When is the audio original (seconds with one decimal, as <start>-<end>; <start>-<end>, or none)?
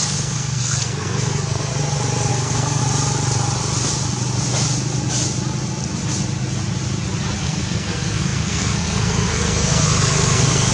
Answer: 1.7-2.3; 2.8-7.4